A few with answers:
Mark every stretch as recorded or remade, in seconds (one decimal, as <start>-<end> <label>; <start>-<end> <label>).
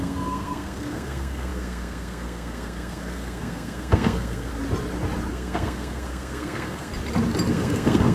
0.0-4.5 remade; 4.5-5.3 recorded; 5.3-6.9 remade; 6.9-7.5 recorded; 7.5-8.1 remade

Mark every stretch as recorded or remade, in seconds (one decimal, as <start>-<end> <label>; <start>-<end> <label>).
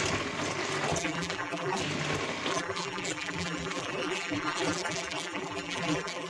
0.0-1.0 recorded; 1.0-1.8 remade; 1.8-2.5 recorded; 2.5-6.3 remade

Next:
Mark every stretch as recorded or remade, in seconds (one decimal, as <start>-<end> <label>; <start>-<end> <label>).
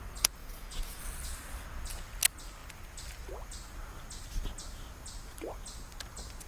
0.0-0.4 recorded; 0.4-1.0 remade; 1.0-6.5 recorded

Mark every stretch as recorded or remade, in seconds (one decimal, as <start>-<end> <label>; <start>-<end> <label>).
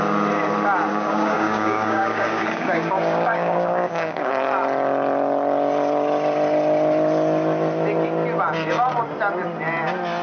0.0-0.9 recorded; 0.9-4.3 remade; 4.3-10.2 recorded